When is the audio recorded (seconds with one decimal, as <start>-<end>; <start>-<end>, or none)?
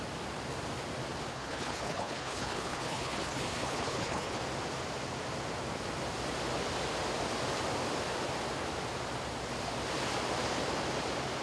0.0-1.3; 4.4-11.4